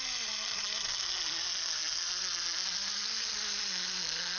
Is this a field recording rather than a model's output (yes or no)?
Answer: yes